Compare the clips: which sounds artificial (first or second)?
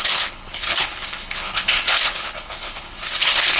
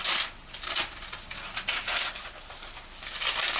first